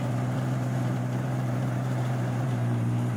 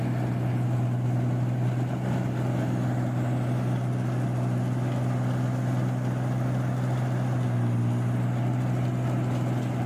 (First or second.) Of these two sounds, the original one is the second